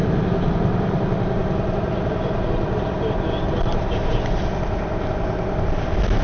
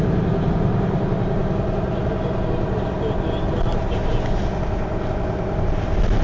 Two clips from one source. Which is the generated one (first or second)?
first